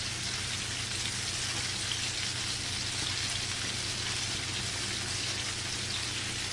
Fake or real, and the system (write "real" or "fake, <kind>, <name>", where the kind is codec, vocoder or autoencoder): real